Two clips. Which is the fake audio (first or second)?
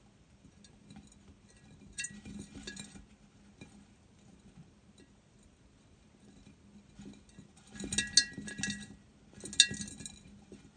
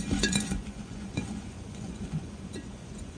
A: second